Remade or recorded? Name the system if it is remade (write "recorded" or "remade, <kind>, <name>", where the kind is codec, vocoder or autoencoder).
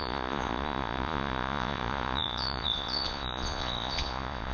remade, vocoder, Vocos